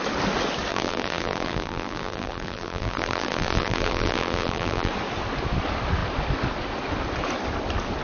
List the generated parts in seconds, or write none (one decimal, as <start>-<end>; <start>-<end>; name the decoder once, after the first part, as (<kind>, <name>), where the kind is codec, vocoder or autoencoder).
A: 0.7-4.9 (vocoder, BigVGAN v2)